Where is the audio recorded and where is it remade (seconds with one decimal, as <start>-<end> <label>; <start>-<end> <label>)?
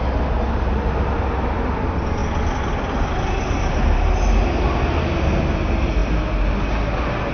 0.0-7.3 recorded